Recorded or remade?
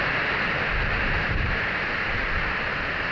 recorded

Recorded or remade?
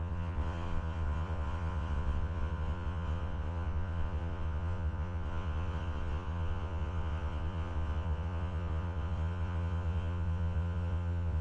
remade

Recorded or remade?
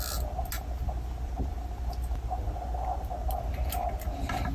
recorded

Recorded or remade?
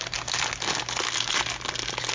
recorded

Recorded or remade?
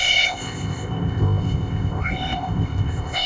remade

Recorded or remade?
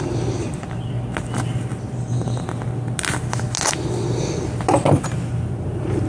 recorded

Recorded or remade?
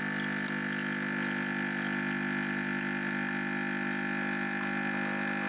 recorded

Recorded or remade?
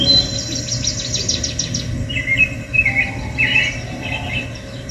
recorded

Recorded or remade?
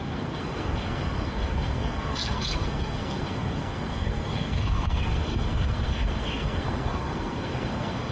remade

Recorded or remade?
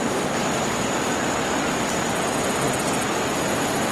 recorded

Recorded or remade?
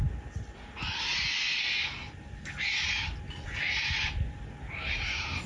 recorded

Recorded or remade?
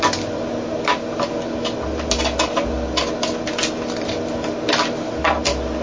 recorded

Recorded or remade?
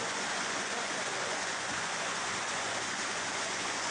remade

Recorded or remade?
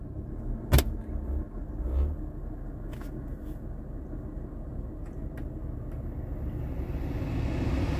recorded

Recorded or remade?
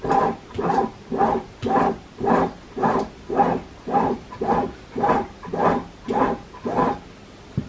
recorded